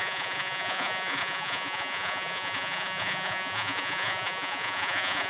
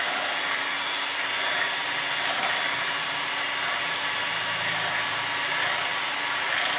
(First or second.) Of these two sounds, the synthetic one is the first